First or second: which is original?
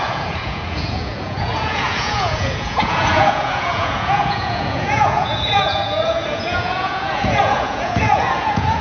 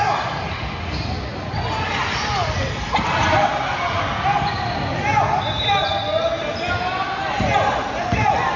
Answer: second